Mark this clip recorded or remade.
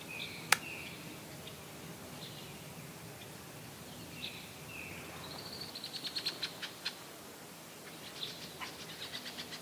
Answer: recorded